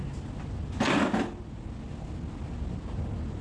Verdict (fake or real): real